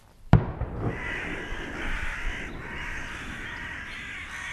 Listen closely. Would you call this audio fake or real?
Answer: fake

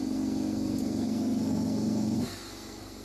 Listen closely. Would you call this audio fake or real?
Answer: fake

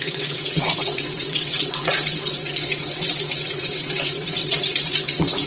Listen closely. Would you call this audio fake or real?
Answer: fake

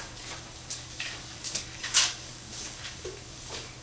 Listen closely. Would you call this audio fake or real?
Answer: fake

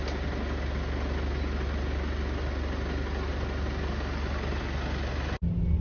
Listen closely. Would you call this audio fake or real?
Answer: real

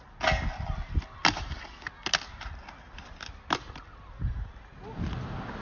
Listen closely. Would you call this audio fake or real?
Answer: real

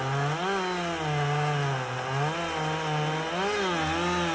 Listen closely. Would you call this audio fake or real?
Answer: real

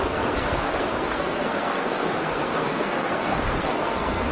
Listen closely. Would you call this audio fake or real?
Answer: fake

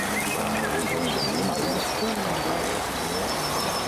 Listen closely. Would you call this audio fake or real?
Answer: real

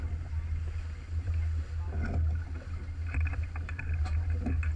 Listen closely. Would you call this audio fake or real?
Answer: real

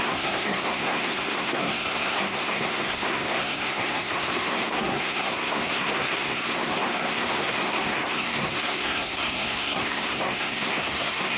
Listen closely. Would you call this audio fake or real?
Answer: fake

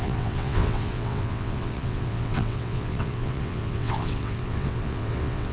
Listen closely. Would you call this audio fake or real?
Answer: fake